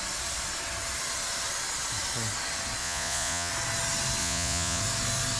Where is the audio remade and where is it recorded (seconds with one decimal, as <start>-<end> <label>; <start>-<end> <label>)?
0.0-2.8 recorded; 2.8-3.5 remade; 3.5-4.2 recorded; 4.2-4.8 remade; 4.8-5.4 recorded